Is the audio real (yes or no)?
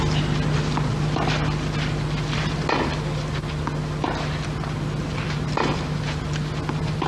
yes